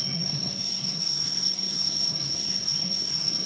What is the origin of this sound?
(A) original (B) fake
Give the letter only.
B